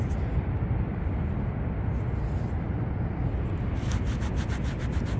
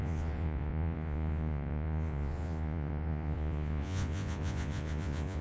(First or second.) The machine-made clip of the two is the second